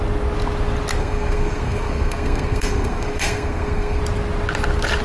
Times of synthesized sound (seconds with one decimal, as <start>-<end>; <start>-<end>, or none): 1.0-4.0